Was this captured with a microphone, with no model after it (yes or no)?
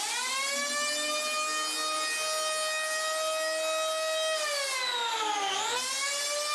yes